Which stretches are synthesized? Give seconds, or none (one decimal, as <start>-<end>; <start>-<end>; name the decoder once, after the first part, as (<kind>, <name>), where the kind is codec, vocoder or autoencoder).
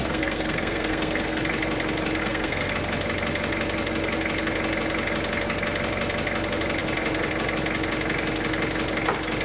0.0-1.4 (codec, SNAC); 2.2-2.7